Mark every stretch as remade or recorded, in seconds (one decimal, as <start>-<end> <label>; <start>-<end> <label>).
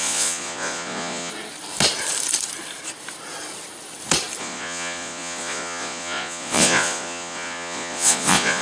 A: 0.0-1.3 remade; 1.3-4.4 recorded; 4.4-8.6 remade